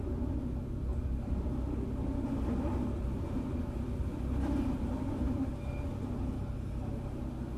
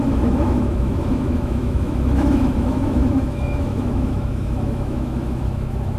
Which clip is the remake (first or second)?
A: second